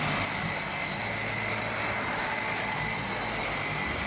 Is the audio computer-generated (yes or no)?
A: no